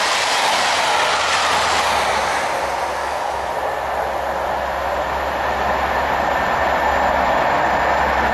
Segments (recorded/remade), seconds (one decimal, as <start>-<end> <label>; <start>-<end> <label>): 0.0-3.0 recorded; 3.0-3.5 remade; 3.5-8.3 recorded

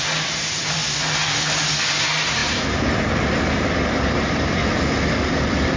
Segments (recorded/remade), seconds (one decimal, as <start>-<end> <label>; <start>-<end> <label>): 0.0-0.8 remade; 0.8-1.9 recorded; 1.9-4.6 remade; 4.6-5.8 recorded

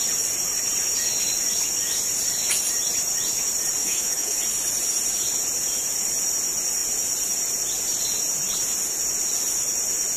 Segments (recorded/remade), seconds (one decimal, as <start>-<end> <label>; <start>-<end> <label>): 0.0-3.8 recorded; 3.8-4.4 remade; 4.4-10.2 recorded

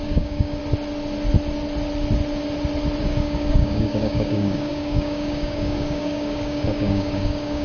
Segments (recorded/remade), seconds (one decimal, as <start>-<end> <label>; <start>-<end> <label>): 0.0-0.6 remade; 0.6-3.0 recorded; 3.0-7.6 remade

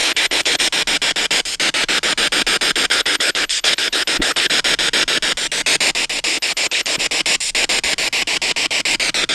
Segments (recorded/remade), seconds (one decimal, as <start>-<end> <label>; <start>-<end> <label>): 0.0-0.6 remade; 0.6-2.9 recorded; 2.9-4.5 remade; 4.5-6.3 recorded; 6.3-7.0 remade; 7.0-9.3 recorded

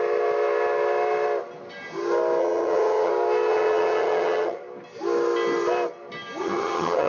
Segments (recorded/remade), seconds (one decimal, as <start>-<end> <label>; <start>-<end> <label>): 0.0-2.4 recorded; 2.4-3.1 remade; 3.1-3.5 recorded; 3.5-4.6 remade; 4.6-6.4 recorded; 6.4-7.1 remade